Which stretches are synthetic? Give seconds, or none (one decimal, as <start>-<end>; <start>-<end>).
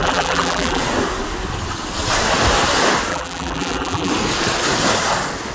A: 0.0-0.8; 3.1-4.1